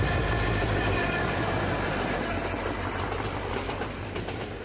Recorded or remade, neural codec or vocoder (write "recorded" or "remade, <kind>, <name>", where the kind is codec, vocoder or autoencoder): recorded